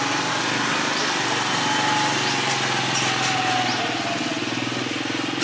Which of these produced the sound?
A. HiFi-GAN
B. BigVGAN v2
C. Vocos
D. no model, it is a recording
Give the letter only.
D